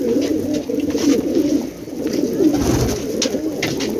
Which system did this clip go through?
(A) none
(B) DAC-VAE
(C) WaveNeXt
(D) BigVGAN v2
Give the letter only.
A